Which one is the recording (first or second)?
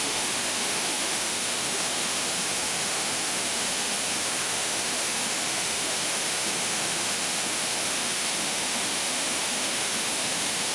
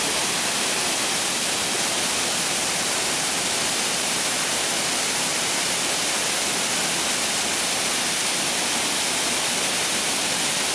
second